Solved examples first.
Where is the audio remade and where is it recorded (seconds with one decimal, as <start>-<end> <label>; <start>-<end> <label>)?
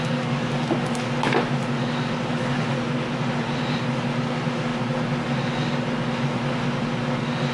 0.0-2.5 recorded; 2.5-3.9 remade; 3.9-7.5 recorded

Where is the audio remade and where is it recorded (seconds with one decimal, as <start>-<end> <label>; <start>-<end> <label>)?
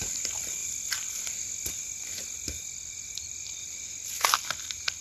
0.0-0.6 recorded; 0.6-1.7 remade; 1.7-5.0 recorded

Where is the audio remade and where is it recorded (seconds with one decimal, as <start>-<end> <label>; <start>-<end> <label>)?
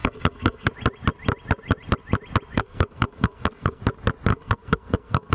0.0-0.7 remade; 0.7-2.5 recorded; 2.5-3.8 remade; 3.8-4.3 recorded; 4.3-5.3 remade